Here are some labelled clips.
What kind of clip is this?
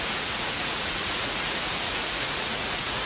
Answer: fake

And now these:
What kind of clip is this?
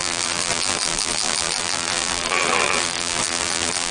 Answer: fake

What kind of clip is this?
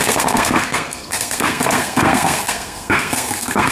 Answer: fake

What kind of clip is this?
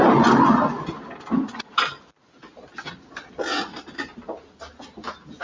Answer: real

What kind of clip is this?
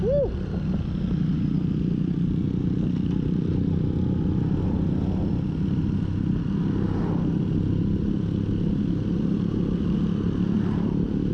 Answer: real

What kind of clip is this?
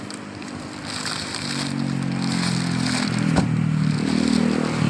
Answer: real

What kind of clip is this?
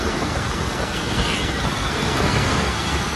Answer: fake